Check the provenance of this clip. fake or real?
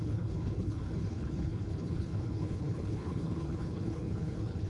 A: fake